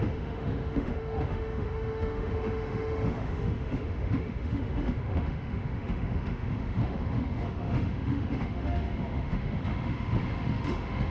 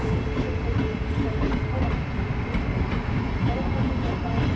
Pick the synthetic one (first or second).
first